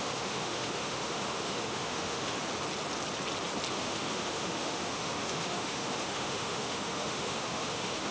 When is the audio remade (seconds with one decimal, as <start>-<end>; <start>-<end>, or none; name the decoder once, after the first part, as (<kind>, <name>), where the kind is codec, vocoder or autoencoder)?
0.0-2.4 (autoencoder, DAC-VAE); 3.7-8.1